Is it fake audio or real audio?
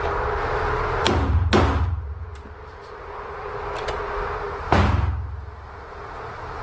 real